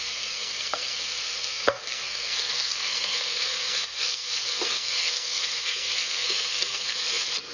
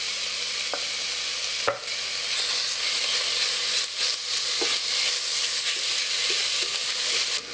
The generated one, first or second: first